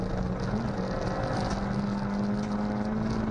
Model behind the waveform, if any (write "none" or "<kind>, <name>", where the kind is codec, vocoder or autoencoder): none